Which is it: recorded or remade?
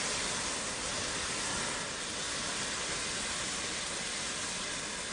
recorded